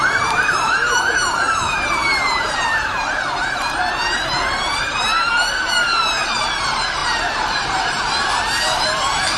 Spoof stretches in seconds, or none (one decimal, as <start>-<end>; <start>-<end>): 0.0-9.4

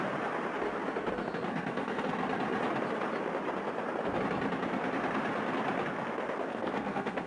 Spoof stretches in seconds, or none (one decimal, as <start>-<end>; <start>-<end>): 1.5-2.1; 6.5-7.3